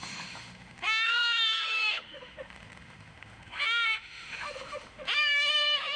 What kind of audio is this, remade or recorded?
remade